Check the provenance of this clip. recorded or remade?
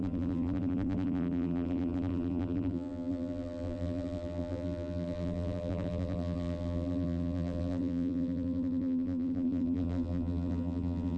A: remade